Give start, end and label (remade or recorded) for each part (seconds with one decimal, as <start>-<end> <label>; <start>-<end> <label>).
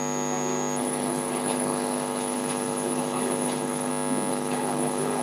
0.0-0.8 recorded; 0.8-3.9 remade; 3.9-4.3 recorded; 4.3-5.2 remade